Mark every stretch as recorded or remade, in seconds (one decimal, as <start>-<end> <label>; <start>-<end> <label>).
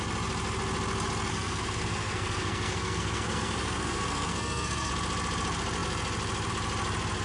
0.0-1.3 recorded; 1.3-4.9 remade; 4.9-7.2 recorded